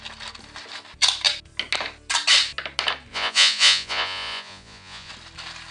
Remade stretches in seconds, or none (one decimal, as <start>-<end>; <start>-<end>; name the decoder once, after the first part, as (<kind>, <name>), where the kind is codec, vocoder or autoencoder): 3.1-5.1 (vocoder, Vocos)